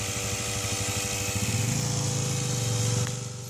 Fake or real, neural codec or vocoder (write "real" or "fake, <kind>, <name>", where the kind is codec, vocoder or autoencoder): real